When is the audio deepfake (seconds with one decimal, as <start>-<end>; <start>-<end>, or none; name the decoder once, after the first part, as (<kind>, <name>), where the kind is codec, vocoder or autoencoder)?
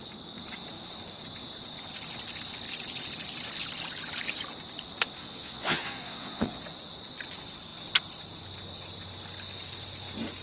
5.2-6.6 (vocoder, Vocos)